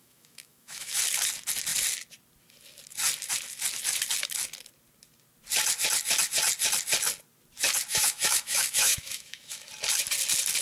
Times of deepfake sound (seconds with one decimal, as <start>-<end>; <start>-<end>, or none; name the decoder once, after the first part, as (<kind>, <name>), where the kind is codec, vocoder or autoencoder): 0.0-1.0 (autoencoder, DAC-VAE); 7.9-9.7